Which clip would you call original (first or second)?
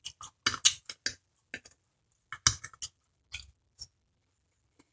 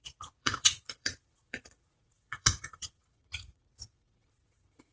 first